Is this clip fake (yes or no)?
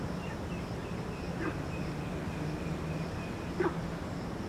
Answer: no